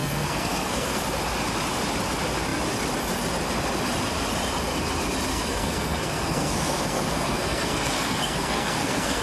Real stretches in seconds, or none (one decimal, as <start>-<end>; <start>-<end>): 1.0-5.3